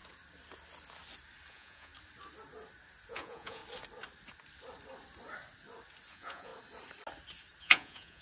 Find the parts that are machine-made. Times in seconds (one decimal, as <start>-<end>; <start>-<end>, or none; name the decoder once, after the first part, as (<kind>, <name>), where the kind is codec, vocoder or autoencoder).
1.5-1.9 (vocoder, Vocos); 3.1-3.6; 6.1-6.5; 7.6-8.2